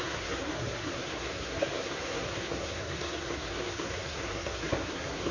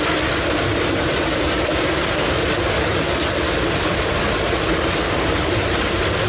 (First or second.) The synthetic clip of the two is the first